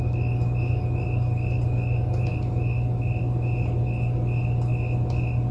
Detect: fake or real real